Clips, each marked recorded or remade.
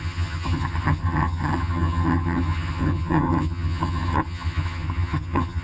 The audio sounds remade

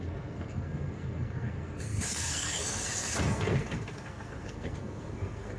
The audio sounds remade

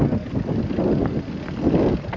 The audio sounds recorded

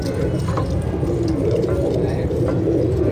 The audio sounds recorded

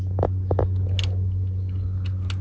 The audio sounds recorded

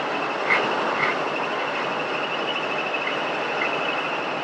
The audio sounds recorded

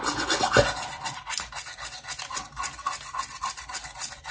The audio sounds recorded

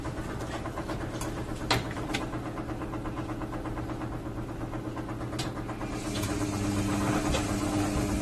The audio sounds recorded